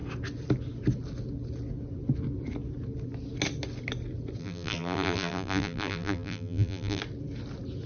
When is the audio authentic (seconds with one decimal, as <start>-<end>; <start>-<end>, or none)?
0.0-4.4; 7.0-7.9